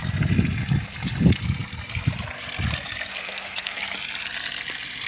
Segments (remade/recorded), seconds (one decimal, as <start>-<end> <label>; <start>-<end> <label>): 0.0-3.1 recorded; 3.1-3.8 remade; 3.8-5.1 recorded